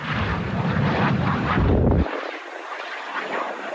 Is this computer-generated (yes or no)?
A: no